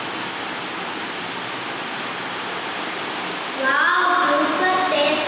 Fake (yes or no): no